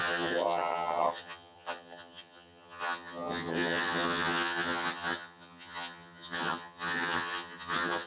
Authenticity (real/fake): fake